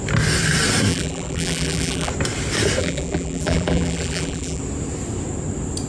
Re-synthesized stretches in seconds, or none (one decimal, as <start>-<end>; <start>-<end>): 0.9-2.1; 2.8-4.6